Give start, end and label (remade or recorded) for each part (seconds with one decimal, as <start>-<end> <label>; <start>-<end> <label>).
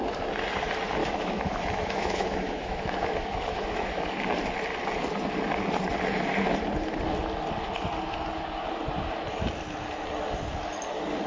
0.0-1.0 recorded; 1.0-4.0 remade; 4.0-11.3 recorded